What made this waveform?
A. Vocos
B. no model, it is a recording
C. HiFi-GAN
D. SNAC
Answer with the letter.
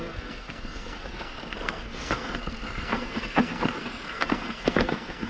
D